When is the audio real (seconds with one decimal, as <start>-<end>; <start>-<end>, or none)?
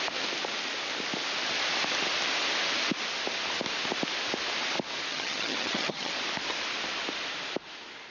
0.0-5.1; 6.1-8.1